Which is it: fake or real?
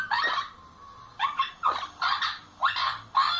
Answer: fake